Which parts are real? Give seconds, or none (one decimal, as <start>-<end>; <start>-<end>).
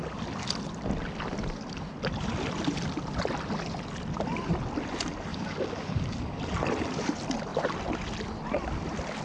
0.0-5.3; 6.4-9.2